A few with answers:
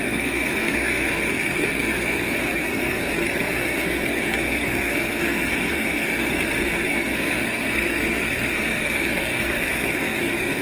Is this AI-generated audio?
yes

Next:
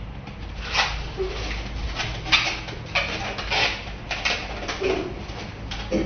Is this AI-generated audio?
no